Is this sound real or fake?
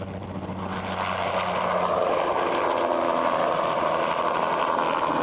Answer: real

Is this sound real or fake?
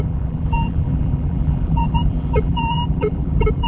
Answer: fake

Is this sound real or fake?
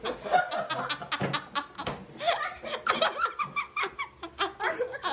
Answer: real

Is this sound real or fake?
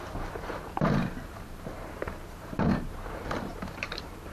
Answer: fake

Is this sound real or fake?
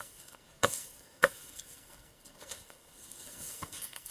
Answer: fake